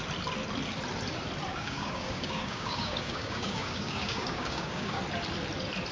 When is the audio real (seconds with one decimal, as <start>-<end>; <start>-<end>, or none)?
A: 0.0-1.5; 5.0-5.9